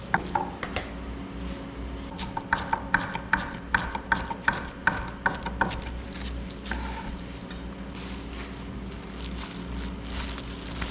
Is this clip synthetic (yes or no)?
no